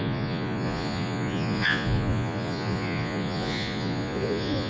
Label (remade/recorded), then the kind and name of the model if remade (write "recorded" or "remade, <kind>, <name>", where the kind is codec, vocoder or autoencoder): remade, vocoder, Vocos